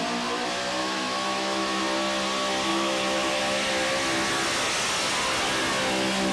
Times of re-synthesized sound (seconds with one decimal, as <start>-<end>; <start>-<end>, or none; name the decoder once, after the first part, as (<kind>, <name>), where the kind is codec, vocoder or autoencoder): 0.8-1.8 (autoencoder, DAC-VAE); 2.7-3.4